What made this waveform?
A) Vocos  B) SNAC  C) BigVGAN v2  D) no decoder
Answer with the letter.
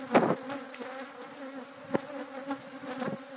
D